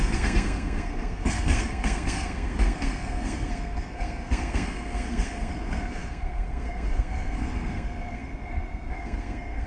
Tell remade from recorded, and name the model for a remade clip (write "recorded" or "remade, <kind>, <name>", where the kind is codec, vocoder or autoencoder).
remade, codec, SNAC